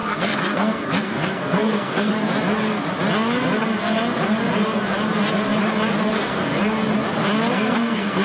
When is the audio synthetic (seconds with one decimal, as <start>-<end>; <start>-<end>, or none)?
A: 0.0-2.1; 6.1-6.5; 7.5-8.2